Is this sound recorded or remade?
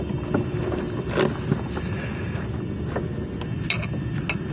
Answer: recorded